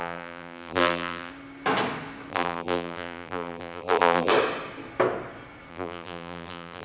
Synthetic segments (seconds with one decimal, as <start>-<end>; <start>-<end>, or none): 0.0-1.3; 2.3-4.3; 5.7-6.8